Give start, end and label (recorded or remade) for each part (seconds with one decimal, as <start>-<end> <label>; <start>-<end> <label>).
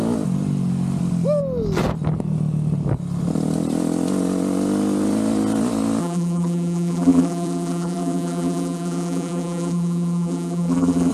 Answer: 0.0-6.0 recorded; 6.0-11.1 remade